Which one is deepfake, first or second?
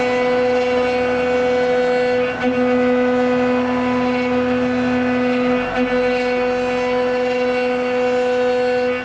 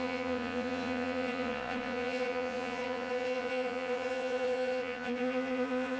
second